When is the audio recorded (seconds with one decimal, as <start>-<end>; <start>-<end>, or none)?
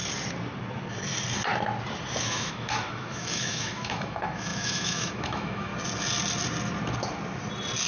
0.0-2.2; 5.7-7.9